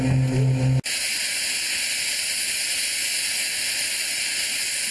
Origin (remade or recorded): recorded